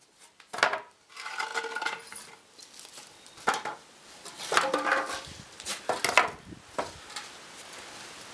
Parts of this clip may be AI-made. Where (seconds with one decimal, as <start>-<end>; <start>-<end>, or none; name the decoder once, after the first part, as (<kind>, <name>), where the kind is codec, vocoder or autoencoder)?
none